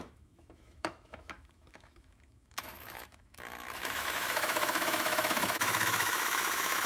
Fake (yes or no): yes